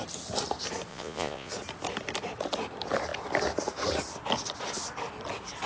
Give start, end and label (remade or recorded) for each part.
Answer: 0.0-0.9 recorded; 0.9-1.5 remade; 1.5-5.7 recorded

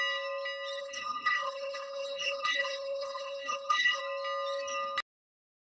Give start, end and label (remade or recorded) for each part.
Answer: 0.0-0.8 recorded; 0.8-4.0 remade; 4.0-5.8 recorded

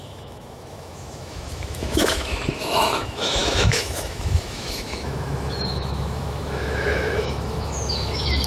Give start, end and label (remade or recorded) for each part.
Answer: 0.0-8.5 remade